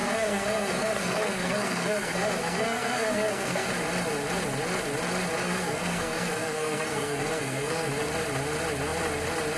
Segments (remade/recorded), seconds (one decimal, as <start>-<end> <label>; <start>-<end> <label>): 0.0-3.7 remade; 3.7-5.4 recorded; 5.4-7.9 remade; 7.9-9.6 recorded